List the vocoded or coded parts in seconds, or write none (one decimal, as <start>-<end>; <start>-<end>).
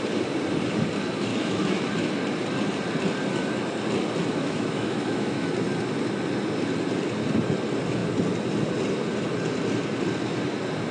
1.3-1.9; 4.3-5.5